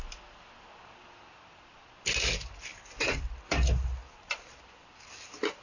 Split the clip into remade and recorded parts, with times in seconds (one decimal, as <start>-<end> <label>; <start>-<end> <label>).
0.0-5.6 recorded